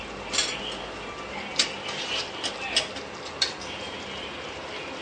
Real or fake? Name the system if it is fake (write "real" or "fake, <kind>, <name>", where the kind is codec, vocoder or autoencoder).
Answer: real